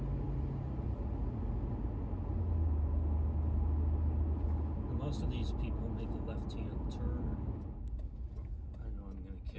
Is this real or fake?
real